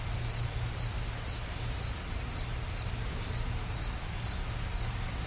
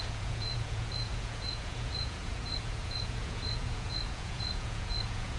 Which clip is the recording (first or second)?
first